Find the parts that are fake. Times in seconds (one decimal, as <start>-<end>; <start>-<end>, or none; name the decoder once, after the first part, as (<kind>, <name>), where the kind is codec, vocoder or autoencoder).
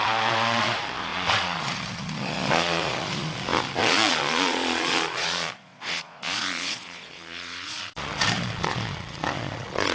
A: 0.0-9.9 (vocoder, Vocos)